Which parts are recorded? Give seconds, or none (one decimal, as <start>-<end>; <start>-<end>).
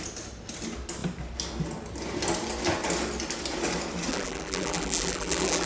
0.0-4.1